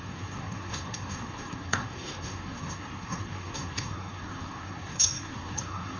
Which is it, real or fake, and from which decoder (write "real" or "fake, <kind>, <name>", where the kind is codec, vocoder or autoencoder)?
fake, codec, SNAC